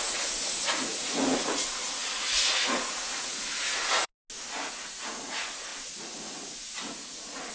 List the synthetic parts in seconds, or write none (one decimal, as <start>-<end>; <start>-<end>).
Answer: 0.0-4.1; 4.7-7.5